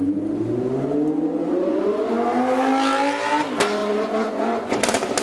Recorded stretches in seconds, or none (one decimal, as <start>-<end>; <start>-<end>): 0.0-1.4; 2.1-3.8; 4.8-5.2